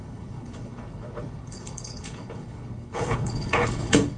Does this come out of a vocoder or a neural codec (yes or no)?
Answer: yes